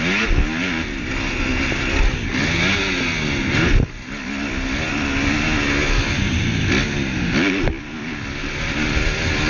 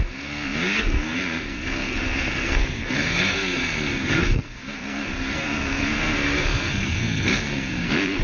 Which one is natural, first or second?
first